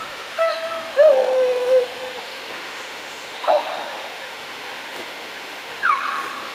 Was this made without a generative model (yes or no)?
no